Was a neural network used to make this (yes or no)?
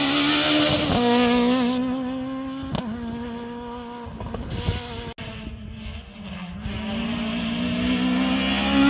no